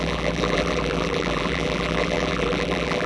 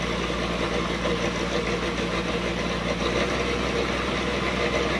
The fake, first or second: first